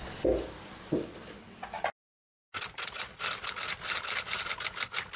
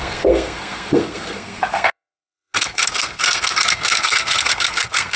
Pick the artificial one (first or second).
second